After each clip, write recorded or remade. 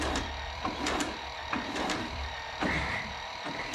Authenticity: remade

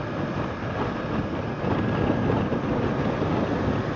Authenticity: recorded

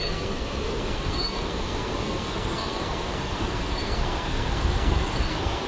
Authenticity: remade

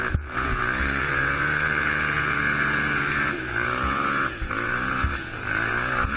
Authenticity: remade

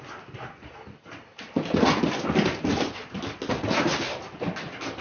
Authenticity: recorded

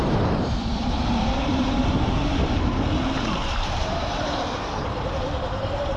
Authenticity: remade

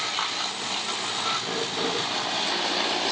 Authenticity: recorded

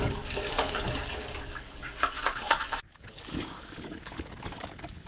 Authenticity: remade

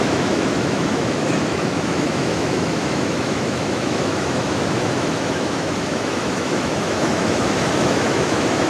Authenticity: remade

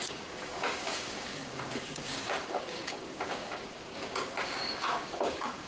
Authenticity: remade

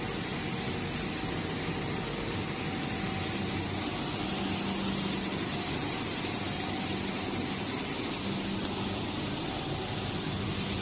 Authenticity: recorded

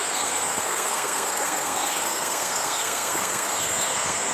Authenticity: remade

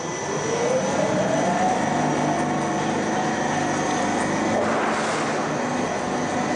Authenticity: recorded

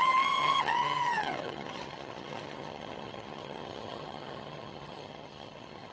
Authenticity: remade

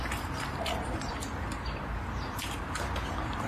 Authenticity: remade